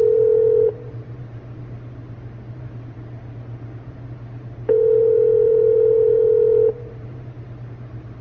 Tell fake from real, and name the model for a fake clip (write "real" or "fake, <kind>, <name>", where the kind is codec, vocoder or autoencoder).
fake, vocoder, BigVGAN v2